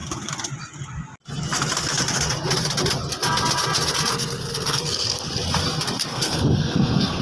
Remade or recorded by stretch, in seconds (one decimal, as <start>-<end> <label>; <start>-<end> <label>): 0.0-4.1 recorded; 4.1-5.3 remade; 5.3-6.1 recorded; 6.1-7.2 remade